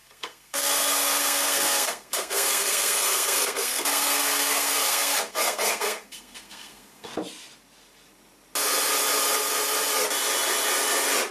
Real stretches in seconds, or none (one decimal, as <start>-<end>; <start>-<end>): 7.1-11.3